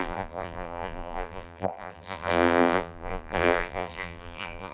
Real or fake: fake